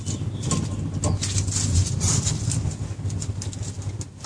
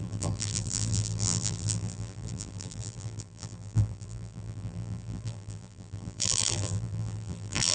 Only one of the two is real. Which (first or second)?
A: first